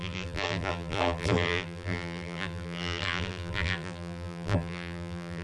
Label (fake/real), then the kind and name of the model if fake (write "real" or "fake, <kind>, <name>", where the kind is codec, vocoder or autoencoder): fake, vocoder, BigVGAN v2